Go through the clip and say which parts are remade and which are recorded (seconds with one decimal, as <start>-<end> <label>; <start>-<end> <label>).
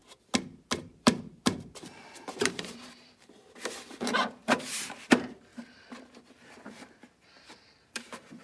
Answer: 0.0-0.9 recorded; 0.9-8.4 remade